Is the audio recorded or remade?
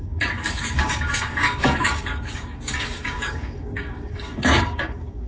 remade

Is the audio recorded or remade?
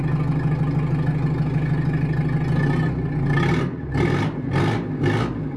recorded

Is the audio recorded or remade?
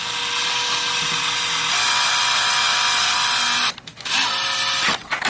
recorded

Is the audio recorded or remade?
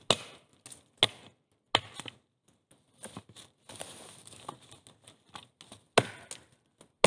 recorded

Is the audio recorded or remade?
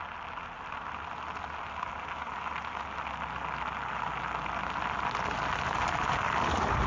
recorded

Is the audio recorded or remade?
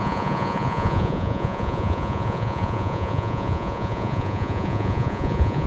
remade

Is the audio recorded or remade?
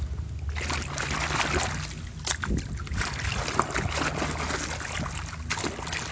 recorded